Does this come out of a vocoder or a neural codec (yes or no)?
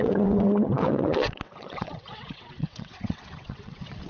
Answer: yes